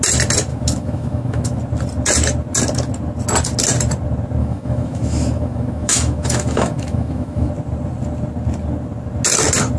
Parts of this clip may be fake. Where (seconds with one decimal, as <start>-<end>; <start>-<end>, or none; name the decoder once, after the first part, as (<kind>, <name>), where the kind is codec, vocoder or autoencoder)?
0.5-1.6 (autoencoder, DAC-VAE); 4.4-7.5